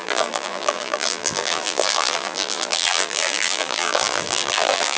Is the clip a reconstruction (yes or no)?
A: yes